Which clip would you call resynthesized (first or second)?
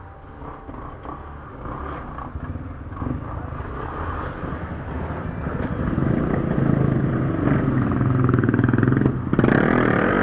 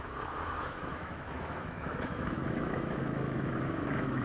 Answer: second